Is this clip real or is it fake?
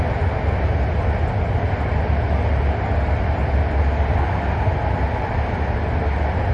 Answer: real